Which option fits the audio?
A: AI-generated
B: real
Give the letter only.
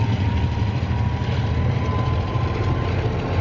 B